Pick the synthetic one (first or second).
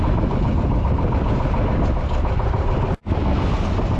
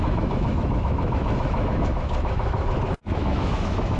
second